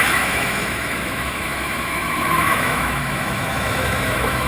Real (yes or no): no